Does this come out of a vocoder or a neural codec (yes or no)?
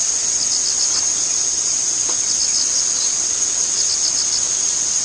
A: no